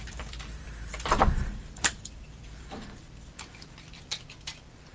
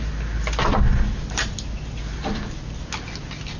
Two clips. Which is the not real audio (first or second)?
first